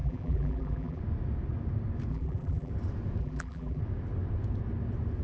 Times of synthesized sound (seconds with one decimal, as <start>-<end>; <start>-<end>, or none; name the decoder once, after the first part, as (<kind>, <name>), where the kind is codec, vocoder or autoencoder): 0.0-1.0 (vocoder, BigVGAN v2); 2.1-2.7; 3.2-3.8